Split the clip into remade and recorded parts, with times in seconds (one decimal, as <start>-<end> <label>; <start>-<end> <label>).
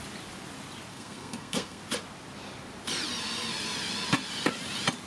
0.0-0.9 recorded; 0.9-1.8 remade; 1.8-5.1 recorded